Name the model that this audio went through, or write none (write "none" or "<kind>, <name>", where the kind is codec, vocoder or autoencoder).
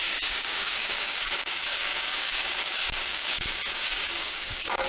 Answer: codec, DAC